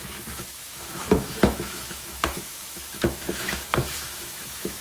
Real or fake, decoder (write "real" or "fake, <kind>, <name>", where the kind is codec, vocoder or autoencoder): fake, autoencoder, DAC-VAE